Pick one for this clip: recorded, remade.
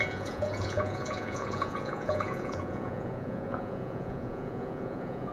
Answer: remade